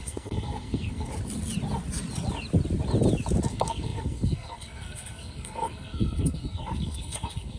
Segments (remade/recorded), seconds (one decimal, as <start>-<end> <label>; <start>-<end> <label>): 0.0-1.1 remade; 1.1-3.5 recorded; 3.5-7.6 remade